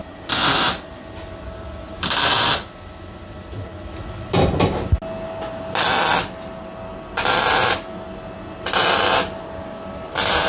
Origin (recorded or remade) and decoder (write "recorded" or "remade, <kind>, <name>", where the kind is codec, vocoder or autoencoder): recorded